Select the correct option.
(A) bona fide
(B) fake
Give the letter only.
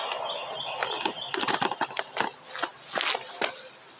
A